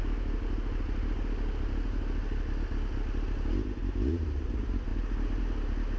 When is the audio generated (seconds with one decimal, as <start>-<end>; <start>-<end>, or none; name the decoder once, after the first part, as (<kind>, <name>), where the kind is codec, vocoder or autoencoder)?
none